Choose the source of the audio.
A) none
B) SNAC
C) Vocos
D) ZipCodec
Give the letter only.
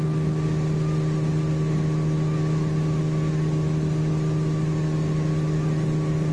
A